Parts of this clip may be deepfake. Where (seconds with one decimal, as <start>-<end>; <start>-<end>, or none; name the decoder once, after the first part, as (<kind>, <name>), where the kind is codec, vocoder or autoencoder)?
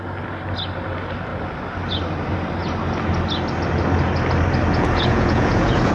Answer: 4.7-5.9 (vocoder, Vocos)